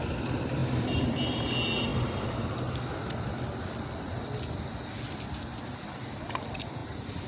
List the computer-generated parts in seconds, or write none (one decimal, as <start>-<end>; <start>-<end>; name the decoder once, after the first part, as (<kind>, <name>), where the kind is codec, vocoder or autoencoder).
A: none